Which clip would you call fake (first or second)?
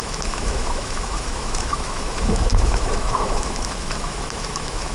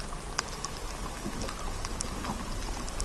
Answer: first